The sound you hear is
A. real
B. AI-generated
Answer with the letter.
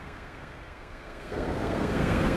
B